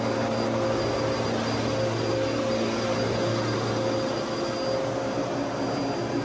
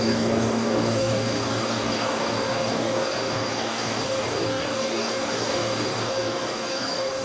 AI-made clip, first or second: second